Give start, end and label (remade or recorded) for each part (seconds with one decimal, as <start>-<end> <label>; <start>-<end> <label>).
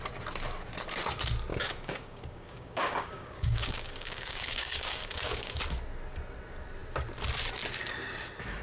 0.0-1.5 recorded; 1.5-5.6 remade; 5.6-8.6 recorded